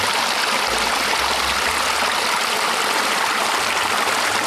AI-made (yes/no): yes